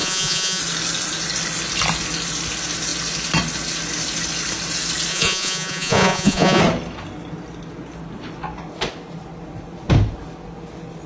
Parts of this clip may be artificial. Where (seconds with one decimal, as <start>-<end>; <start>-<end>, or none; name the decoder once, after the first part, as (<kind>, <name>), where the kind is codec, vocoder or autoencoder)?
0.0-0.6 (vocoder, Vocos); 5.1-6.6